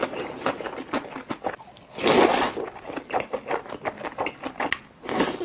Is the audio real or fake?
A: real